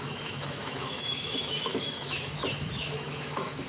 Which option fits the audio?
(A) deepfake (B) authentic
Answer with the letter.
A